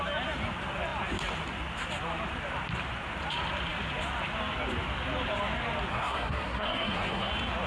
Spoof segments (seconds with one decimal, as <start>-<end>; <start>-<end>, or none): 5.9-7.3